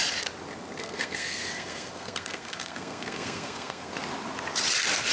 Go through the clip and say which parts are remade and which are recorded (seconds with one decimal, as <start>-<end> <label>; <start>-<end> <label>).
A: 0.0-0.8 recorded; 0.8-3.9 remade; 3.9-5.1 recorded